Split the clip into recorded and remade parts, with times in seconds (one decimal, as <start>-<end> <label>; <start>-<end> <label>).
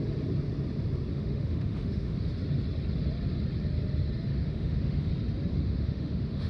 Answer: 0.0-1.1 recorded; 1.1-2.3 remade; 2.3-4.3 recorded; 4.3-5.1 remade; 5.1-5.5 recorded; 5.5-6.5 remade